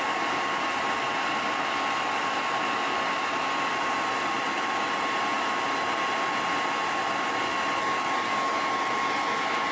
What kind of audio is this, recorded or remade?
recorded